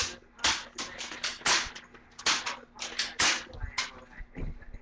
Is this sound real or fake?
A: real